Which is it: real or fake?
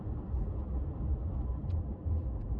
real